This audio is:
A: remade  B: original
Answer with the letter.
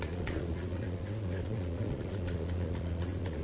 A